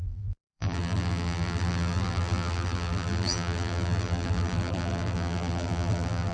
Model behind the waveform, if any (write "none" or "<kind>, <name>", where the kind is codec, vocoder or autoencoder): vocoder, BigVGAN v2